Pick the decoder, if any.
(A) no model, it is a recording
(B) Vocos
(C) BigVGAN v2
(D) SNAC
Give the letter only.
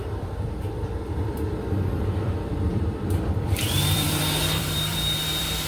C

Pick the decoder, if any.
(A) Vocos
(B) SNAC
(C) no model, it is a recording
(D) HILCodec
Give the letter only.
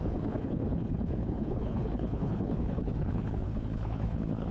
D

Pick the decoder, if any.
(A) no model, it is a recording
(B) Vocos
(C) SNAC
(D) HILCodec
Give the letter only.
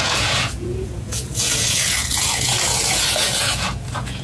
B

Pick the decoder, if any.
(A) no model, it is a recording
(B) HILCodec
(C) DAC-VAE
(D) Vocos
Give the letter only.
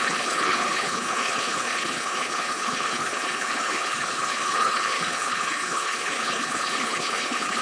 B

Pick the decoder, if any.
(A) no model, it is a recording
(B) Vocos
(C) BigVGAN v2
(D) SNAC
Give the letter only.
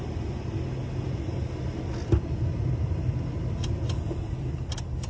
A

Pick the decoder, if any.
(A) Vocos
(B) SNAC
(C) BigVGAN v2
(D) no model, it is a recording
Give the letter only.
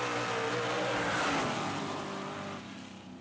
D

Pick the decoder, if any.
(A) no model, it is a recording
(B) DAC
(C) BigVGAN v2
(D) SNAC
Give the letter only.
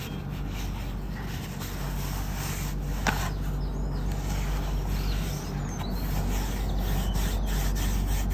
A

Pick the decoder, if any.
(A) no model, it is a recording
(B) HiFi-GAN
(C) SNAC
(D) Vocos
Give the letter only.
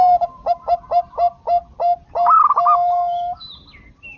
A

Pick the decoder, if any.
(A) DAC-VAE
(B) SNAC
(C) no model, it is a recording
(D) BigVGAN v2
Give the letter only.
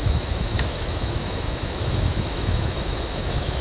A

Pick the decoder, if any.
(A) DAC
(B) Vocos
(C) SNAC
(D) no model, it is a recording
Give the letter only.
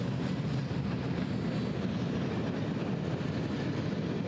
D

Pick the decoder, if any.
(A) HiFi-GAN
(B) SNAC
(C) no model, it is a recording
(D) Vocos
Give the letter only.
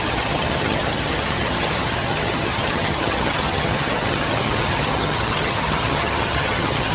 A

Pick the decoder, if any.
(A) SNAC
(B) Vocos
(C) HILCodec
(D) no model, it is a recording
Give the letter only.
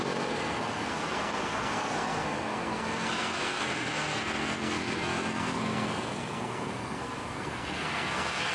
A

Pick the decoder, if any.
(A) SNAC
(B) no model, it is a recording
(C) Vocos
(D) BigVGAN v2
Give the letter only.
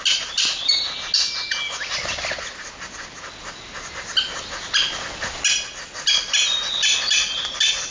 B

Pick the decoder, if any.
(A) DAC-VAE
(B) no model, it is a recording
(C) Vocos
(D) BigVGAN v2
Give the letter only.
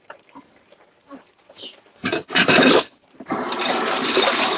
D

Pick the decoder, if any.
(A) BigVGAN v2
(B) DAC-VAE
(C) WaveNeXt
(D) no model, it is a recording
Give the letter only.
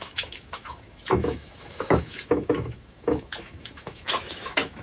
B